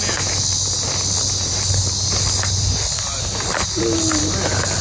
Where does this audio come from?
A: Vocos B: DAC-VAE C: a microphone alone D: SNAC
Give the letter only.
C